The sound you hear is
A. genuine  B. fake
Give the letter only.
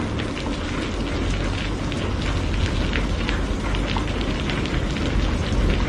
A